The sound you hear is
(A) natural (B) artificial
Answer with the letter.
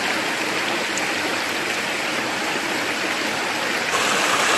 A